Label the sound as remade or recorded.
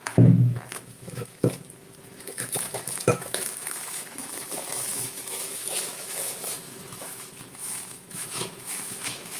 remade